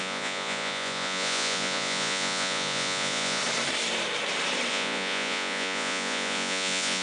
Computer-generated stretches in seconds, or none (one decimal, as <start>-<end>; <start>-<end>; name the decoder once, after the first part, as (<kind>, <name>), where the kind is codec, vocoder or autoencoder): 0.0-3.4 (vocoder, Vocos); 4.7-7.0

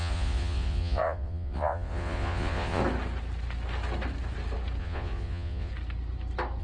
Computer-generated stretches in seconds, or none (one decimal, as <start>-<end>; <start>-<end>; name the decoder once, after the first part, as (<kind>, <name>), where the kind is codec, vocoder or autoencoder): 0.0-2.8 (vocoder, Vocos); 4.8-5.7

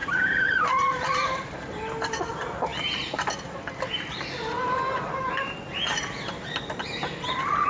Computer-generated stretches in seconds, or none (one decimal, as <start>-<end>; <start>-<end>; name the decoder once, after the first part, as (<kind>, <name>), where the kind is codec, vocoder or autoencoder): 0.0-1.8 (vocoder, BigVGAN v2); 5.9-7.0